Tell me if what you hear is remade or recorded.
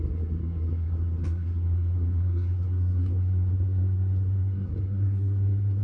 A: remade